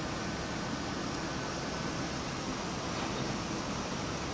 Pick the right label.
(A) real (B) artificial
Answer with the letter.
A